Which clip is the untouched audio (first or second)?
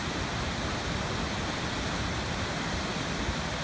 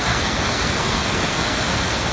first